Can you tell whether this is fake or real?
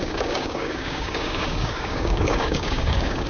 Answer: fake